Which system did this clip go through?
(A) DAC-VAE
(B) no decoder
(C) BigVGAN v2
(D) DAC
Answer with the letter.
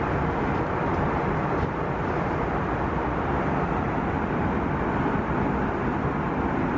B